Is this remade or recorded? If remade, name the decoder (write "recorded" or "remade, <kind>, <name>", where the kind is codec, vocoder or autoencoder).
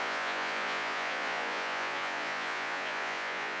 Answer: remade, vocoder, Vocos